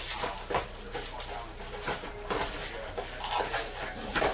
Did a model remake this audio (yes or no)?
no